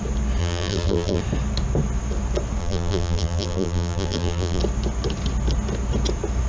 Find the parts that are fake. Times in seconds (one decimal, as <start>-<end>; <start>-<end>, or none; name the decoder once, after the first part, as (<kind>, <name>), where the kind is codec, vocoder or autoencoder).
0.4-1.2 (vocoder, BigVGAN v2); 2.6-4.6